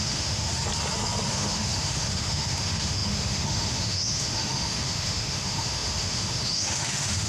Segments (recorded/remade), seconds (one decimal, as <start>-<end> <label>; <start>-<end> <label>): 0.0-0.5 remade; 0.5-1.3 recorded; 1.3-7.3 remade

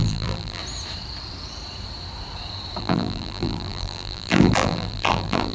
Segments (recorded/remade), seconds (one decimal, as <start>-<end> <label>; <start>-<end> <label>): 0.0-0.6 remade; 0.6-2.8 recorded; 2.8-5.5 remade

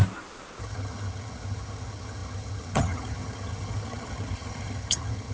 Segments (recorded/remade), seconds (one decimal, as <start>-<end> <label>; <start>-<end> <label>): 0.0-0.6 recorded; 0.6-5.3 remade

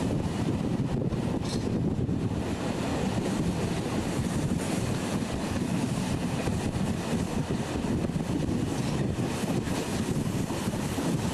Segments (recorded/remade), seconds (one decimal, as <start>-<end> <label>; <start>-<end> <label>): 0.0-2.9 remade; 2.9-3.8 recorded; 3.8-6.5 remade; 6.5-10.6 recorded; 10.6-11.3 remade

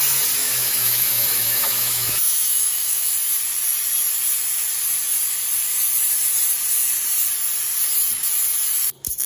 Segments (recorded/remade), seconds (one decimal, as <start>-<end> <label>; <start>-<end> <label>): 0.0-0.4 recorded; 0.4-3.1 remade; 3.1-9.3 recorded

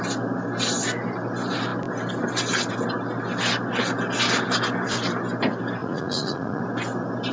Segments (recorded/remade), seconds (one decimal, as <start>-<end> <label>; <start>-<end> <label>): 0.0-5.8 recorded; 5.8-6.6 remade; 6.6-7.3 recorded

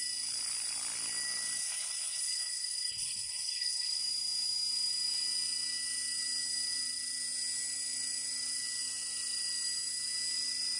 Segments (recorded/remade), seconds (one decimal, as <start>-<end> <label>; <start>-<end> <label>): 0.0-1.6 recorded; 1.6-4.0 remade; 4.0-10.8 recorded